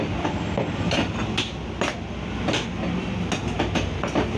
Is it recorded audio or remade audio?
recorded